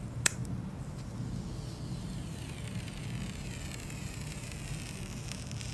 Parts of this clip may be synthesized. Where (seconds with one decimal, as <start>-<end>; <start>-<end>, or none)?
0.0-0.4; 1.9-5.7